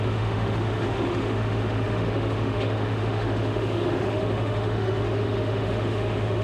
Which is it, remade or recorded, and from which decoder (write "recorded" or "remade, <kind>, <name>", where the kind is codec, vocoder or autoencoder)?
remade, autoencoder, DAC-VAE